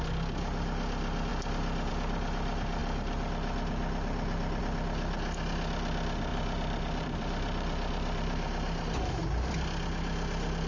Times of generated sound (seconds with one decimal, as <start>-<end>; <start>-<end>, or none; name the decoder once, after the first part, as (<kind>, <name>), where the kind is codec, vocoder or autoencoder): 6.3-9.1 (vocoder, BigVGAN v2)